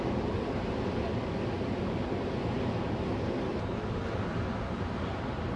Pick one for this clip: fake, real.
real